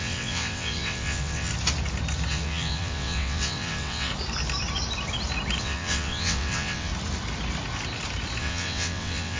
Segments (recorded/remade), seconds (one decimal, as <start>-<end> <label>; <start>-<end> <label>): 0.0-1.5 remade; 1.5-2.3 recorded; 2.3-4.1 remade; 4.1-5.6 recorded; 5.6-6.9 remade; 6.9-8.4 recorded; 8.4-9.4 remade